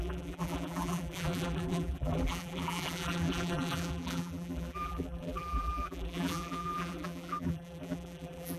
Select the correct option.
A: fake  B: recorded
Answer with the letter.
A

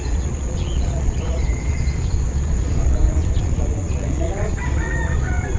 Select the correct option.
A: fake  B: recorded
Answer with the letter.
A